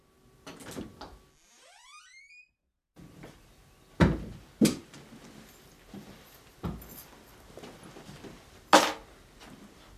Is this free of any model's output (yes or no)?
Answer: yes